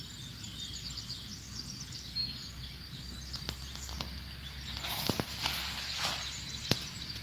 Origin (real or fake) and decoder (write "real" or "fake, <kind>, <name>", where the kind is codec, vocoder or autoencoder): real